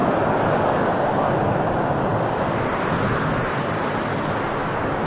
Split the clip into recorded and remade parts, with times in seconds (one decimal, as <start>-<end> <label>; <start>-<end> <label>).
0.0-5.1 recorded